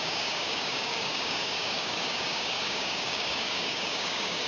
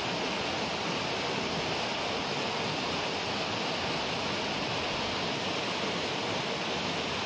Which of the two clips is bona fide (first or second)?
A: second